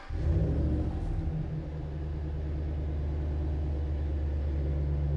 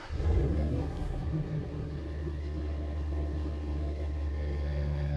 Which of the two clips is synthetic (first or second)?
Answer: second